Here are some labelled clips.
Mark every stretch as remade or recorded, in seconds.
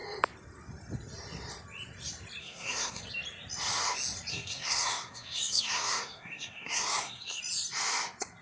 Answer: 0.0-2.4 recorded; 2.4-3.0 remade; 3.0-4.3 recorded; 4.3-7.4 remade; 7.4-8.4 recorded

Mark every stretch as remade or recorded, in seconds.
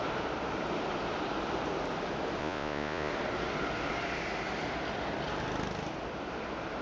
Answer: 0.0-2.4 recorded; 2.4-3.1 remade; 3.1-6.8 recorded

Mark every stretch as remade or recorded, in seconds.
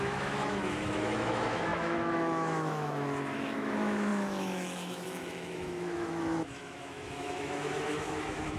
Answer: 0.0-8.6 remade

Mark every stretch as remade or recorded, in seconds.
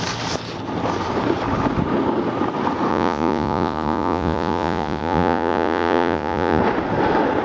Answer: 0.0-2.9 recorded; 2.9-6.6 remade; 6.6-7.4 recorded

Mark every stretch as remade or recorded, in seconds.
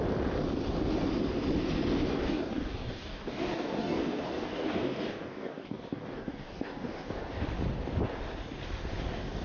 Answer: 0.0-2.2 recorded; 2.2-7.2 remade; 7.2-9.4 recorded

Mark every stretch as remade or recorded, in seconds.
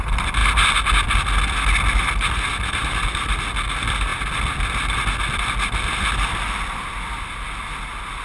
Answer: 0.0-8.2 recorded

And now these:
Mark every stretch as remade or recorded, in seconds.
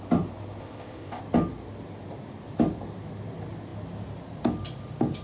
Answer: 0.0-0.6 recorded; 0.6-1.2 remade; 1.2-5.2 recorded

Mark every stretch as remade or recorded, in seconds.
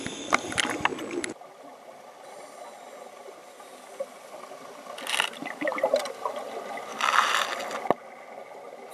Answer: 0.0-8.9 recorded